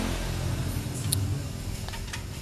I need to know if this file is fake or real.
real